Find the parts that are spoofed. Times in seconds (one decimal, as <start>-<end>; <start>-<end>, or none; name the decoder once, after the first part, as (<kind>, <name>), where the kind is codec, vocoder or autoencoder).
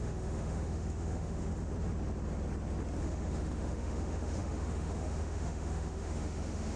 0.0-1.5 (autoencoder, DAC-VAE); 3.0-6.8